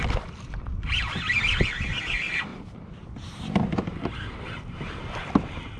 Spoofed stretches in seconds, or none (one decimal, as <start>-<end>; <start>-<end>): 2.5-3.1